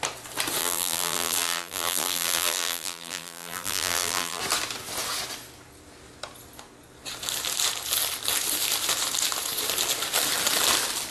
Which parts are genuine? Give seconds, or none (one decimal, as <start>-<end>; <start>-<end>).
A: 0.0-0.6; 4.4-11.1